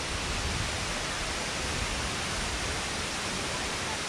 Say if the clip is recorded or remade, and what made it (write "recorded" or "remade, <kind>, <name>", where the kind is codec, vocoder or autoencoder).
recorded